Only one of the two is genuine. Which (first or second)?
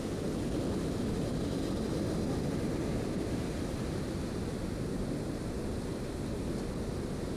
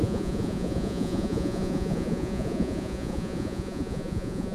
first